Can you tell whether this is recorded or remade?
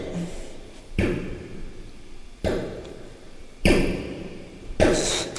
remade